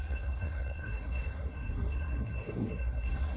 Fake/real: fake